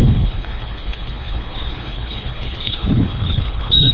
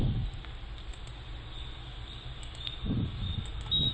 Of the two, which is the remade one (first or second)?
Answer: first